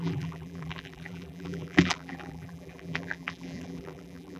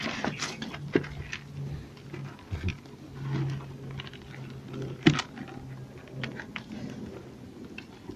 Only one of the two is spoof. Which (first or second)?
first